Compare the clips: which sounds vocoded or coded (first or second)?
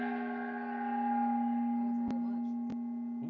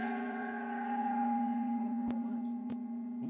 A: second